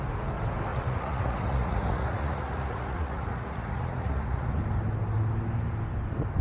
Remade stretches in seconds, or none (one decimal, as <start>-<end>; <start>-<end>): 0.7-4.5